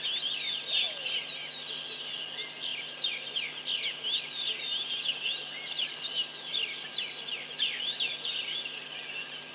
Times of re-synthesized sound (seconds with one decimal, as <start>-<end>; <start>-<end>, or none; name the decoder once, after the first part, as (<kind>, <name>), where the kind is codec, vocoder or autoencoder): none